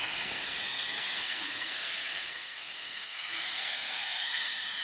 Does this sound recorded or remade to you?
remade